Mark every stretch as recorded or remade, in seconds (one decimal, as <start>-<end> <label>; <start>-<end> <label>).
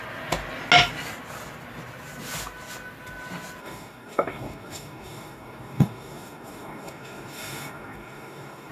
0.0-3.6 recorded; 3.6-8.7 remade